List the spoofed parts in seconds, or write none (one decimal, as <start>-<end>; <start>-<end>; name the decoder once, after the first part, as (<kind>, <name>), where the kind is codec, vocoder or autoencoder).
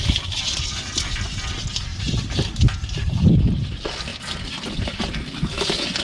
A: 1.9-3.3 (vocoder, BigVGAN v2)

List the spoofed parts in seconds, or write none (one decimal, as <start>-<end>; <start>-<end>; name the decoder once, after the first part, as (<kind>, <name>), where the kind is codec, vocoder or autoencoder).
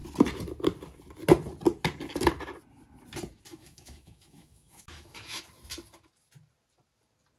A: 3.5-5.4 (autoencoder, DAC-VAE)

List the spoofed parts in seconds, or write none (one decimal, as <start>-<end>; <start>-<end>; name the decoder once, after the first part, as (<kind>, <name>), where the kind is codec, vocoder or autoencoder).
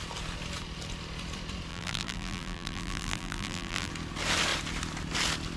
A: 1.7-3.9 (vocoder, BigVGAN v2)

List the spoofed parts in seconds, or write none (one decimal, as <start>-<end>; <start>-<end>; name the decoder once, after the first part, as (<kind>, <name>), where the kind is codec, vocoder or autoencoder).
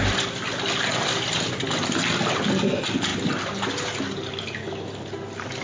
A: none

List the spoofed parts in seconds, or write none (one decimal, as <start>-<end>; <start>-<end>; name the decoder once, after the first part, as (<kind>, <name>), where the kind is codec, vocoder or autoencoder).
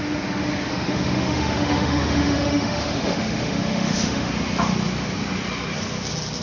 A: 0.7-4.3 (autoencoder, DAC-VAE)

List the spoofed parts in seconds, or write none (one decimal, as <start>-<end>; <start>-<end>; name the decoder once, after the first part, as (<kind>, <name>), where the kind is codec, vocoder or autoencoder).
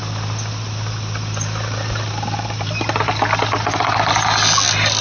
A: 0.0-3.0 (vocoder, BigVGAN v2)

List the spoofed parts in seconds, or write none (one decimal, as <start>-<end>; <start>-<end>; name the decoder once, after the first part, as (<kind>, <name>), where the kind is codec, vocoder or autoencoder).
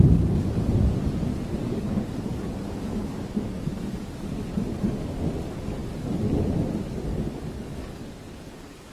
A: 1.6-4.4 (codec, DAC); 7.1-8.9